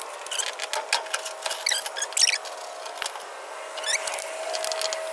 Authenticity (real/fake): real